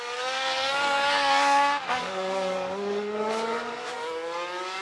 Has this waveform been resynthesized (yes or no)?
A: yes